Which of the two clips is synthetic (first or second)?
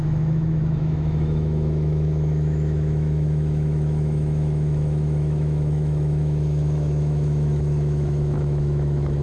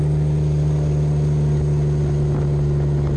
first